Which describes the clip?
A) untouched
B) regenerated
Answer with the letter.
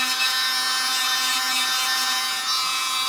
B